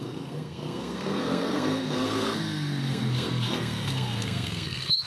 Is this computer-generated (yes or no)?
yes